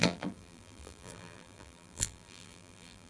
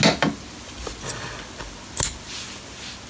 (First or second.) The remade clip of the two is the first